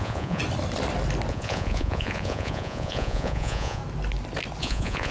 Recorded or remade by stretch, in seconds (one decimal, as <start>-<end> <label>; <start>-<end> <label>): 0.0-0.4 remade; 0.4-1.3 recorded; 1.3-3.8 remade; 3.8-4.6 recorded; 4.6-5.1 remade